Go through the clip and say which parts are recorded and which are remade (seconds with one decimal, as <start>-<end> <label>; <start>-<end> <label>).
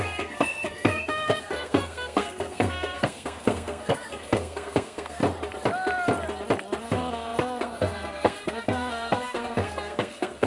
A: 0.0-5.2 remade; 5.2-6.8 recorded; 6.8-10.5 remade